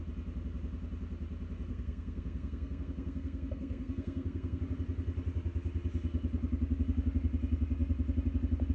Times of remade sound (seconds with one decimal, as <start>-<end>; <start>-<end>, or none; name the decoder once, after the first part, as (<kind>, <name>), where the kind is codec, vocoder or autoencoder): 1.7-4.6 (codec, SNAC)